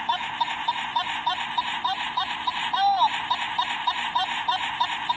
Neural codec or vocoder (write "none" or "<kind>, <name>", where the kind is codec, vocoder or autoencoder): none